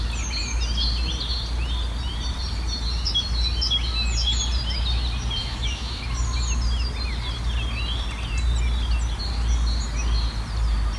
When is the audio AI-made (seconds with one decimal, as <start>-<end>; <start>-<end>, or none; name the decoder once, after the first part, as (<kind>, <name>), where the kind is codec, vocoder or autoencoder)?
5.4-6.0 (autoencoder, DAC-VAE)